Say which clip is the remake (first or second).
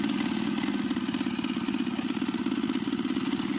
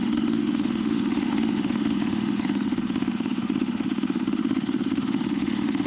second